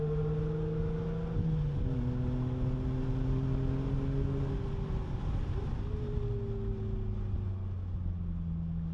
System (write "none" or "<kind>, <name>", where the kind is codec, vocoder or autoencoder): none